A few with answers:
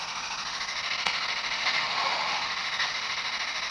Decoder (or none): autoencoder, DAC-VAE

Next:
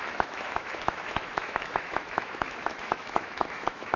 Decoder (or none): autoencoder, DAC-VAE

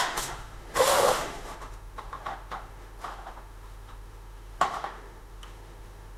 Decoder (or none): autoencoder, DAC-VAE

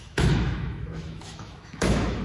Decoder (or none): autoencoder, DAC-VAE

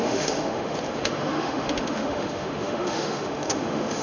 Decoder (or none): autoencoder, DAC-VAE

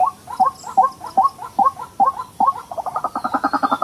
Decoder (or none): none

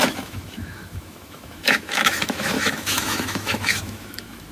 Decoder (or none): autoencoder, DAC-VAE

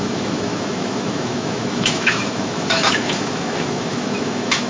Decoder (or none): autoencoder, DAC-VAE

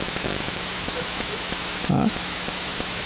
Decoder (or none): autoencoder, DAC-VAE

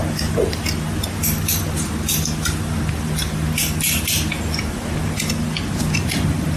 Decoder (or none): none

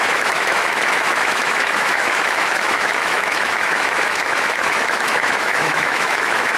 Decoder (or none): autoencoder, DAC-VAE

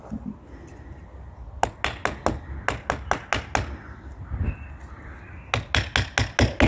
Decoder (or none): none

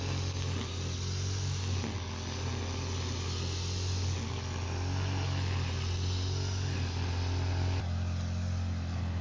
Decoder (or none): none